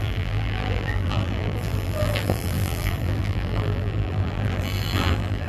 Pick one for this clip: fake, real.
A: fake